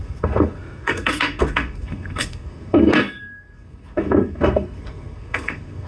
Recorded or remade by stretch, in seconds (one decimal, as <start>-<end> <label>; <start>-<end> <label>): 0.0-5.9 remade